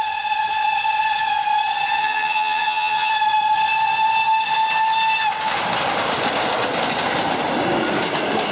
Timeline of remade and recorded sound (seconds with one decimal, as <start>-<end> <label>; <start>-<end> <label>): 0.0-2.0 recorded; 2.0-3.1 remade; 3.1-8.5 recorded